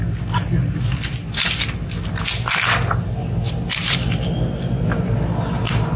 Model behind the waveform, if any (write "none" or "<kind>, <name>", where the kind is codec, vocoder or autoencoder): none